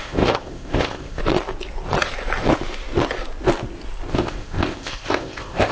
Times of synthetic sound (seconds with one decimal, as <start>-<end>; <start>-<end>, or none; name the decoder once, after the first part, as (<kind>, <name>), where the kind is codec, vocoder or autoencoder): 0.0-1.2 (codec, ZipCodec); 4.1-5.7